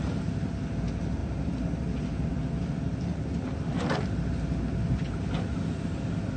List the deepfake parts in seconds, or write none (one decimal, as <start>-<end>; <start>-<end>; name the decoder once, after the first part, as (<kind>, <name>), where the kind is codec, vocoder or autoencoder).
none